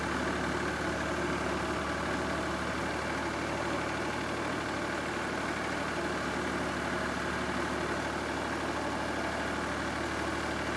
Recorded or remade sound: recorded